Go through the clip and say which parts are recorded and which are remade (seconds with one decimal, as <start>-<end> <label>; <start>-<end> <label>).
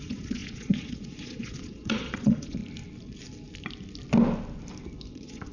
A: 0.0-2.6 remade; 2.6-5.1 recorded; 5.1-5.5 remade